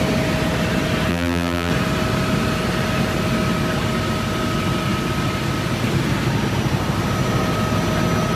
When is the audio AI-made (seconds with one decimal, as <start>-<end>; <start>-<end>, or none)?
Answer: 1.1-1.7